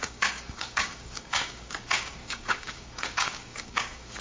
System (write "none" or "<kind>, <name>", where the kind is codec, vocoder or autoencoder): codec, DAC